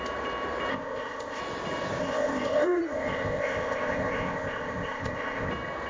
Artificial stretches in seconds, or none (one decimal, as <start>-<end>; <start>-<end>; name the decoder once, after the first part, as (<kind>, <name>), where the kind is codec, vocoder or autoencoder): 0.7-1.4 (codec, ZipCodec); 2.0-5.5